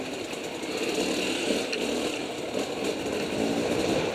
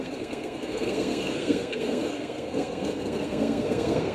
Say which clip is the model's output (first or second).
second